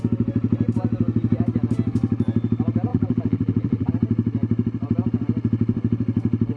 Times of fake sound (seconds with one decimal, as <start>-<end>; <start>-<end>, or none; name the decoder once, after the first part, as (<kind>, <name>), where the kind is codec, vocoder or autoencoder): 2.9-3.9 (vocoder, BigVGAN v2)